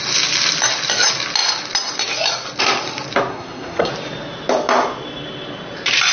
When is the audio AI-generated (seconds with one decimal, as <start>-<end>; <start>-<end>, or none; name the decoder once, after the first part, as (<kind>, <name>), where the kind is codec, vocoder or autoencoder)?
3.3-3.9 (codec, SNAC)